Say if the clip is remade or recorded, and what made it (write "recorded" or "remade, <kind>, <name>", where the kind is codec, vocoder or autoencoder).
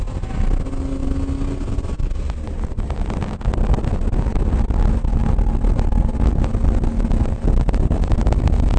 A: recorded